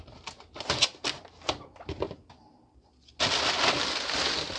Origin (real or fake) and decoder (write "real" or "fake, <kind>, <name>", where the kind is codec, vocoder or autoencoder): real